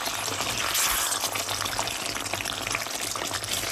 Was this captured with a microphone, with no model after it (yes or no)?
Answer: yes